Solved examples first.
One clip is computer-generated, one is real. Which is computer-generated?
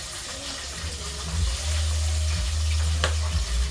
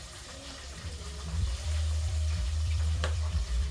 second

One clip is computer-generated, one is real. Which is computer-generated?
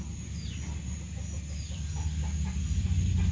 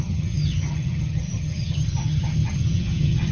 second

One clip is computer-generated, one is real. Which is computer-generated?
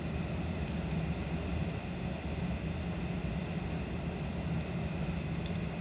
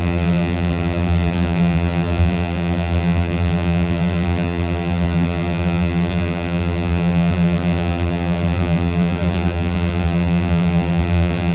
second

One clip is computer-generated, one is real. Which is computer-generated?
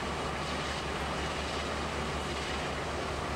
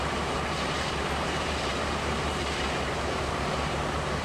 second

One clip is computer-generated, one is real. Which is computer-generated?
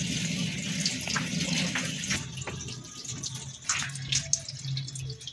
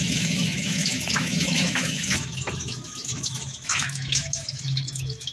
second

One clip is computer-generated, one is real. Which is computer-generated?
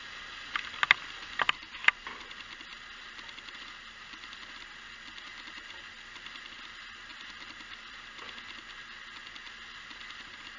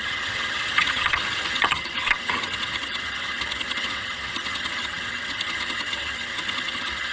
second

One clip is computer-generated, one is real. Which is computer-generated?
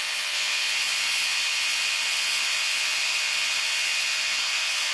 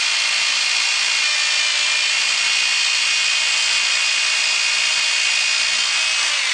first